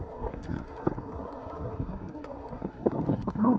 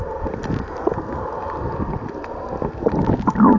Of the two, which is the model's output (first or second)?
first